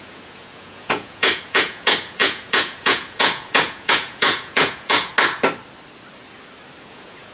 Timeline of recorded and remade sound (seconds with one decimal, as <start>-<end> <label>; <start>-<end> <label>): 0.0-5.1 remade; 5.1-6.8 recorded; 6.8-7.3 remade